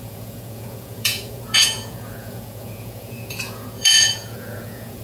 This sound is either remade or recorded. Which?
remade